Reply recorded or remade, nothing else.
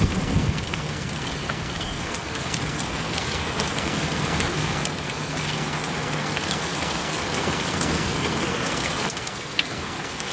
remade